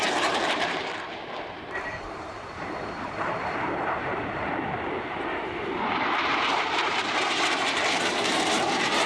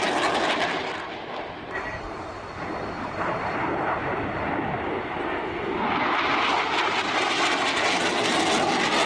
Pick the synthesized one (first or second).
first